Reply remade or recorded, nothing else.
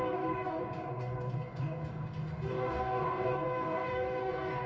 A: remade